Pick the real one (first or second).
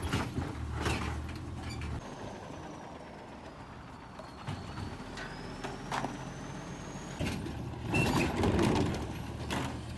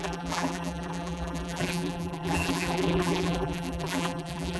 first